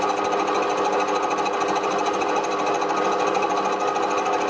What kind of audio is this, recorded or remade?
recorded